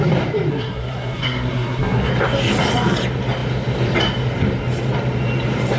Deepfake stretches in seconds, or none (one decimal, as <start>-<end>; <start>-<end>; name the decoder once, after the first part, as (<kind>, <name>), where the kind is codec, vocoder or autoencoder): 0.5-2.1 (codec, SNAC)